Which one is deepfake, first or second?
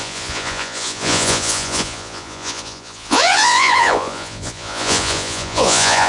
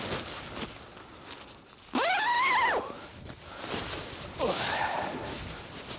first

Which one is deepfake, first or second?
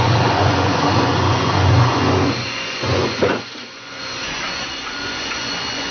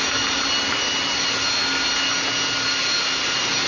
first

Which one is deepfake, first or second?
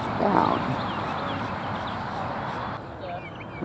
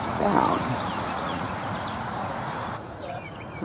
second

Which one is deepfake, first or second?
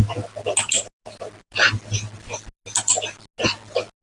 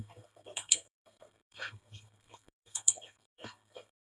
second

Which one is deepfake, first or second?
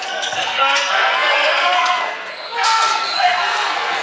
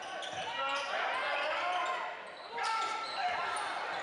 first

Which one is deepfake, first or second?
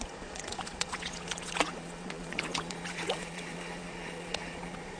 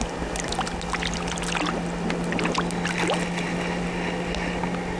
first